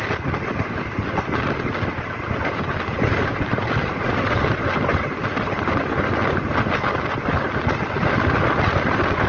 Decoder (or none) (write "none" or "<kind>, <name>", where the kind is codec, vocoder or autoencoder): none